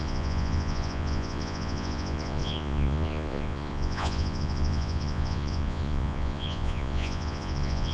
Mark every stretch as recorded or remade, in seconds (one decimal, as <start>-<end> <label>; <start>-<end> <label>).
0.0-7.9 remade